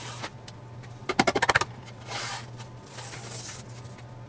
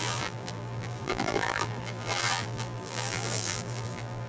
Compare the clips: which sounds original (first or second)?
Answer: first